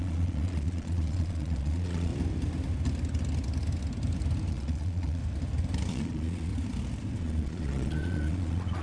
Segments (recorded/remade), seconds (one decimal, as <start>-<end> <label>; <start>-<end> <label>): 0.0-2.1 remade; 2.1-4.5 recorded; 4.5-5.2 remade; 5.2-5.9 recorded; 5.9-6.5 remade; 6.5-7.2 recorded; 7.2-8.8 remade